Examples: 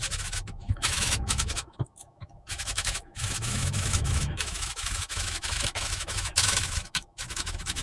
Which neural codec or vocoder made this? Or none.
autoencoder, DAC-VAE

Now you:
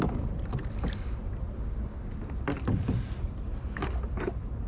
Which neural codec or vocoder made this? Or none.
none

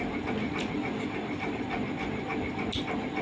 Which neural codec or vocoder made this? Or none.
none